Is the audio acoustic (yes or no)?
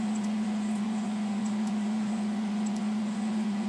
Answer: no